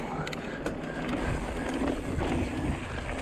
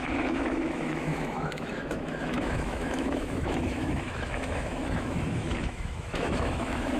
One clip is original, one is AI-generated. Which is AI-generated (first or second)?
second